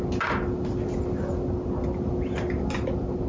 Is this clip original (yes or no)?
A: yes